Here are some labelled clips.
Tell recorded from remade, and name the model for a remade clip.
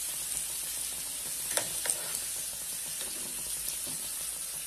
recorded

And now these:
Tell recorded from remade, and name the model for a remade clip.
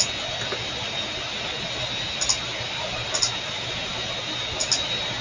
recorded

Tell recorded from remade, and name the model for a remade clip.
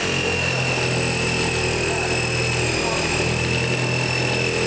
recorded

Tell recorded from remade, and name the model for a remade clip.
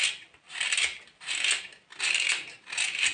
recorded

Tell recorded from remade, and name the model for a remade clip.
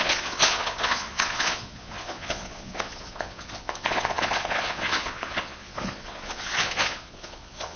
remade, vocoder, Vocos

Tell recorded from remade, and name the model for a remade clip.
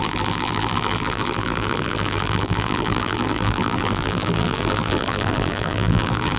remade, vocoder, BigVGAN v2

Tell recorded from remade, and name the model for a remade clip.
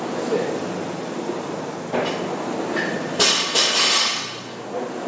recorded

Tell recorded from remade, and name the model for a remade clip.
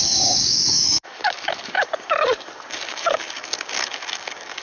remade, codec, DAC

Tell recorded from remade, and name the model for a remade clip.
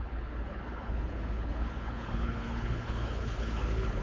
remade, codec, HILCodec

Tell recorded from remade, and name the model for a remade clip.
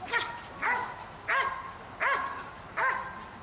recorded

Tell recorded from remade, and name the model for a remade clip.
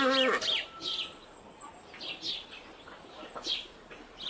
recorded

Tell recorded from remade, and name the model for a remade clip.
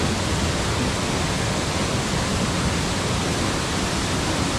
recorded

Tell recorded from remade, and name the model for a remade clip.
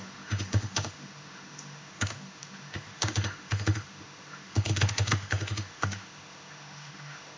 remade, autoencoder, DAC-VAE